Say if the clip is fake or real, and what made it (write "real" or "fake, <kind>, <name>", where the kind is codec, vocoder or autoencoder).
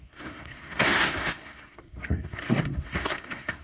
fake, codec, SNAC